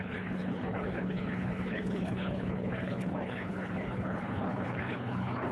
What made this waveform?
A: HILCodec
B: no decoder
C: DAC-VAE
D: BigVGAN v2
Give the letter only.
A